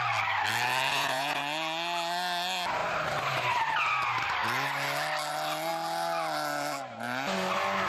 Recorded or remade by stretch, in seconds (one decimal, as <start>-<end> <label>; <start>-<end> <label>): 0.0-0.9 recorded; 0.9-1.4 remade; 1.4-7.9 recorded